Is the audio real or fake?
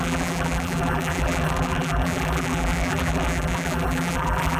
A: fake